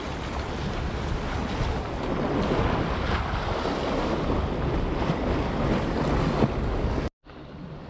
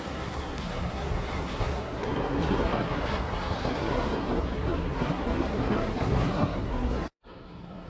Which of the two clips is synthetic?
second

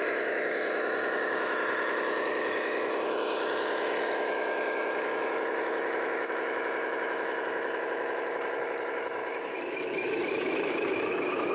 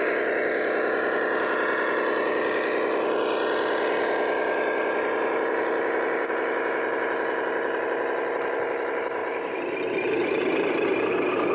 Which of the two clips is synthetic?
first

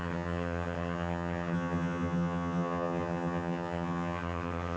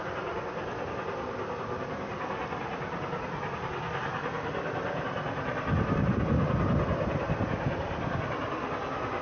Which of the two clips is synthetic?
first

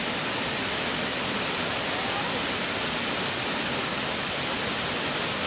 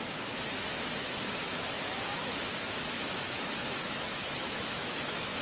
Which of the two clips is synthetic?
second